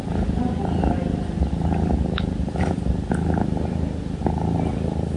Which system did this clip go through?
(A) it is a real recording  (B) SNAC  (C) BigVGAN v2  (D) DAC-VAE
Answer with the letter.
A